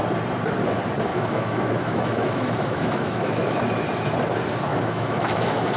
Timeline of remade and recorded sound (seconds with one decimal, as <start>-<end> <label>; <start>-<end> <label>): 0.0-1.1 recorded; 1.1-3.6 remade; 3.6-4.7 recorded; 4.7-5.8 remade